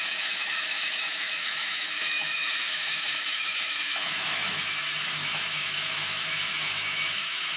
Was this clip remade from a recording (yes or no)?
yes